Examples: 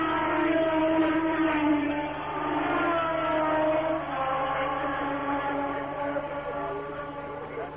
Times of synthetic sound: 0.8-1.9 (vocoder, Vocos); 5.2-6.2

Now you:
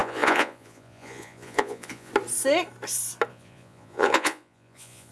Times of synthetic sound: 0.0-2.1 (vocoder, Vocos); 3.3-5.1

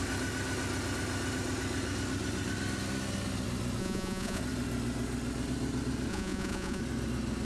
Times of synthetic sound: 3.8-4.4 (vocoder, Vocos); 6.1-6.8

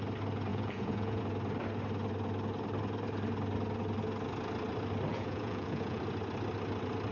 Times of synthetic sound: 0.5-1.2 (vocoder, Vocos); 5.1-6.0

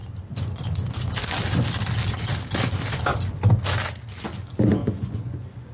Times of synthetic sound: 4.8-5.7 (vocoder, Vocos)

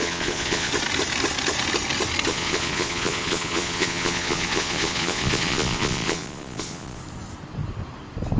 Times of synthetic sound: 0.0-0.7 (vocoder, Vocos); 2.3-7.0

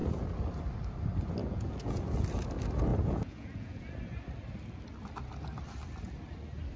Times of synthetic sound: 1.4-2.0 (vocoder, Vocos); 2.9-3.9